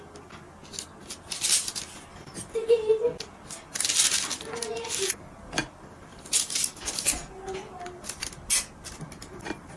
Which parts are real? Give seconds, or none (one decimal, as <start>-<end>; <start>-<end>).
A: 0.0-9.8